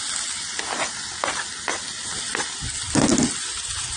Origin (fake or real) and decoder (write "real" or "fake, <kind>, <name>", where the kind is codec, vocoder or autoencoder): real